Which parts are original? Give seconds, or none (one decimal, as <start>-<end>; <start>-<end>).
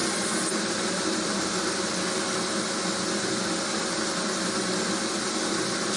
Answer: 0.0-6.0